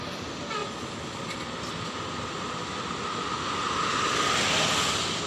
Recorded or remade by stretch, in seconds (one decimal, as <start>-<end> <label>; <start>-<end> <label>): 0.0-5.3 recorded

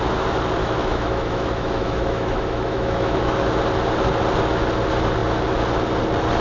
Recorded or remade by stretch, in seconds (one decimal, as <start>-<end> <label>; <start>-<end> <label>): 0.0-0.6 recorded; 0.6-3.6 remade; 3.6-6.4 recorded

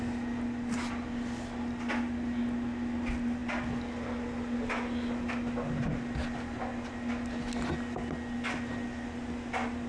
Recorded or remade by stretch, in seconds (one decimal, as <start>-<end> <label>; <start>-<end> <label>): 0.0-9.9 recorded